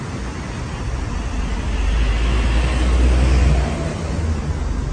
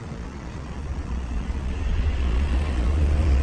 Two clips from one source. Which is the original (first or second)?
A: first